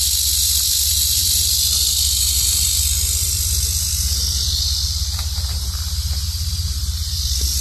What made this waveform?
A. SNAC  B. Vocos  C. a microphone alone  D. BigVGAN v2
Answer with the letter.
C